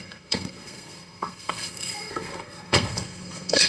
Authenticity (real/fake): fake